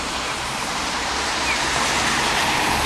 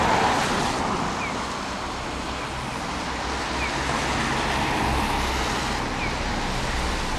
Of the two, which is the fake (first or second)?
first